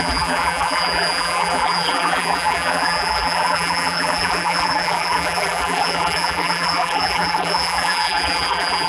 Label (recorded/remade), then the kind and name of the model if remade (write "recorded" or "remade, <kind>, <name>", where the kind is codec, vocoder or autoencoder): remade, vocoder, BigVGAN v2